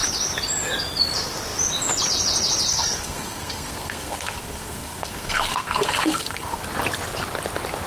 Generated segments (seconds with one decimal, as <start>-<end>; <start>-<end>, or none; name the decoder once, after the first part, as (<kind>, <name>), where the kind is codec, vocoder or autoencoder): 2.7-6.6 (codec, SNAC)